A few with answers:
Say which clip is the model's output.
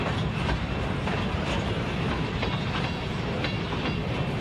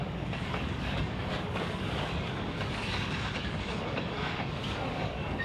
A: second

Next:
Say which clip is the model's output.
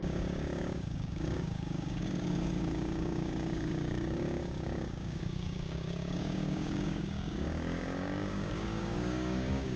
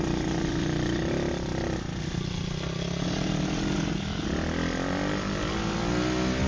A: first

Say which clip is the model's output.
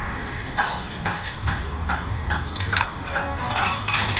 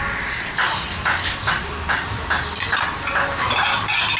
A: first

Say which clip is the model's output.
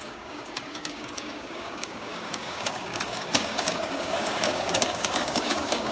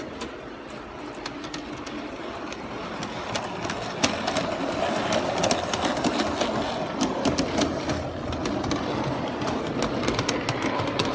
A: first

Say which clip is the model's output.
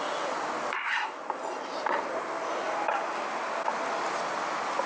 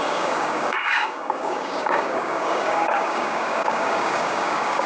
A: second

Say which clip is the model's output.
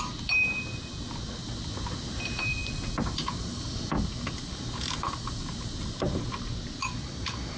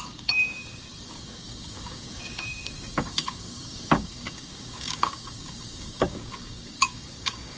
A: second